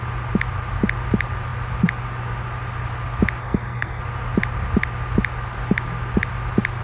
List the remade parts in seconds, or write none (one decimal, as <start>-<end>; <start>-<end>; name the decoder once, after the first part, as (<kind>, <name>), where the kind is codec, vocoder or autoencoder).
3.4-4.0 (codec, SNAC)